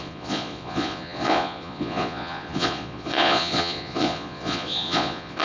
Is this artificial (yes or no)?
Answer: yes